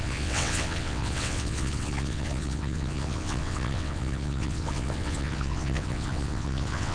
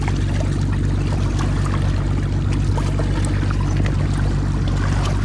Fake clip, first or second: first